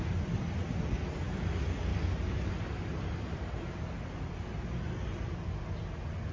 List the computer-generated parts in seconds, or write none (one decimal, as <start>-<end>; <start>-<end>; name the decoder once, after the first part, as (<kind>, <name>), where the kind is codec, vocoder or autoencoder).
1.9-2.5 (vocoder, BigVGAN v2)